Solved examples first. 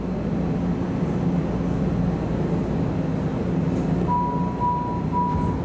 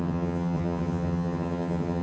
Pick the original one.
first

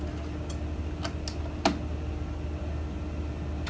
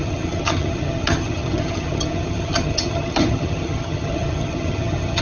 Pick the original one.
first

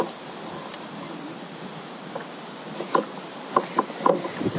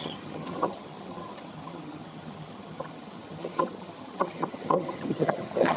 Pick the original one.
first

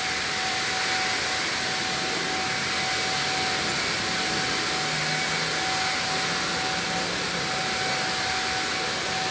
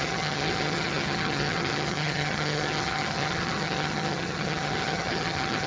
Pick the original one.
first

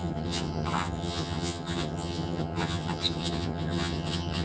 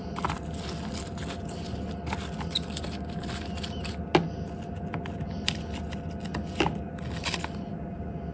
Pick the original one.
second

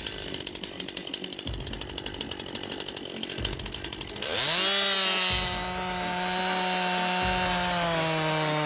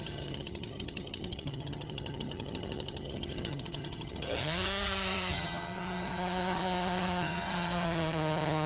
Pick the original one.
first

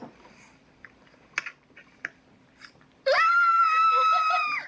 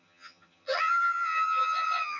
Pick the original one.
first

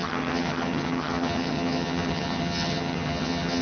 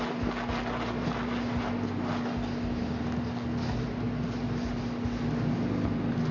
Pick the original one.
second